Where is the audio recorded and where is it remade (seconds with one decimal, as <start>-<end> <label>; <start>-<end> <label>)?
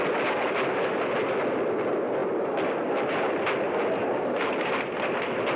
0.0-5.6 recorded